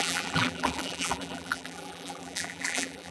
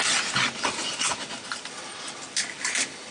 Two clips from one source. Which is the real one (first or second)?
second